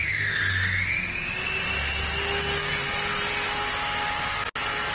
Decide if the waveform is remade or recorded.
recorded